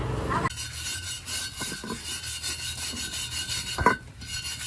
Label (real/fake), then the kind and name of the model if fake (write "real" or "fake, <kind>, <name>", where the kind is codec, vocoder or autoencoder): real